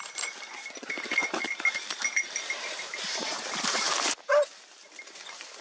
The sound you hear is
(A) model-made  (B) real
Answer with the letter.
A